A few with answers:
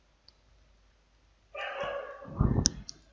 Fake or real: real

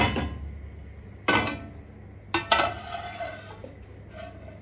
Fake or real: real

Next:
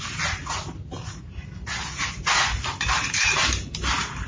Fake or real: real